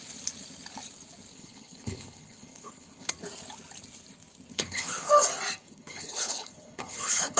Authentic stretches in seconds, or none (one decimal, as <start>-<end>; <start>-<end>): 0.0-1.3; 3.1-4.5; 5.1-5.6